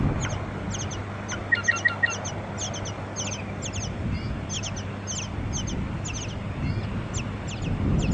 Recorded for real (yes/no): yes